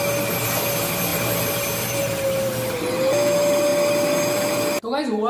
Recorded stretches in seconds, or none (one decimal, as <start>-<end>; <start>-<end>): 0.0-5.3